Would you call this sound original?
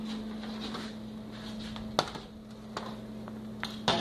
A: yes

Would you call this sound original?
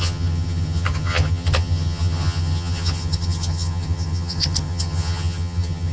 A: no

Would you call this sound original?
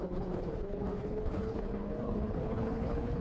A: no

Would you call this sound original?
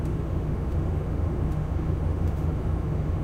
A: no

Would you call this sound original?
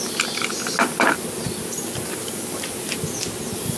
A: yes